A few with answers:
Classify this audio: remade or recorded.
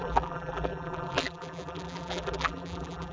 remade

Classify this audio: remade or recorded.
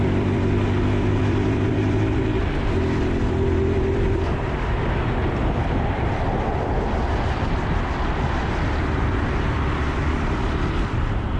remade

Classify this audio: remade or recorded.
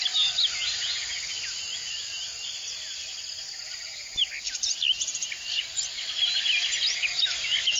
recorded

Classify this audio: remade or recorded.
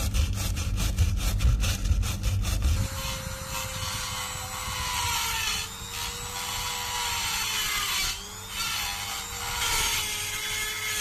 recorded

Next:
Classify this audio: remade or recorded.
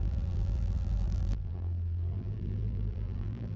remade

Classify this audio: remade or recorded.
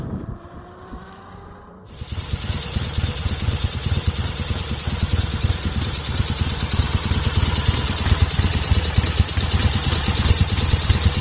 remade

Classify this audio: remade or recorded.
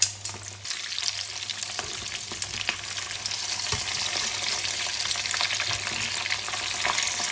recorded